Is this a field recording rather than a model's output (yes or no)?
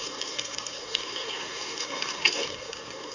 no